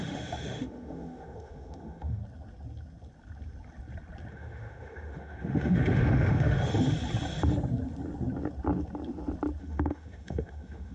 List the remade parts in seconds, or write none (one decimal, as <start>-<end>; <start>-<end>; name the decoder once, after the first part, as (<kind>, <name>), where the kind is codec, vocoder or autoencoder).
0.0-2.2 (autoencoder, DAC-VAE); 4.3-6.7; 9.6-10.9